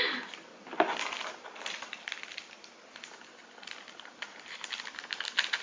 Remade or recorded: recorded